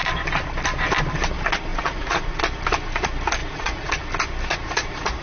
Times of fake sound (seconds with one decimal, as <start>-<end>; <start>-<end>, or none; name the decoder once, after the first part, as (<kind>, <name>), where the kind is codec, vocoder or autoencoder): 1.7-2.4 (vocoder, Vocos); 3.4-3.9; 4.5-5.2